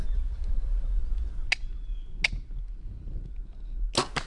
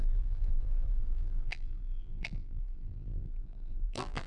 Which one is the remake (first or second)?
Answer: second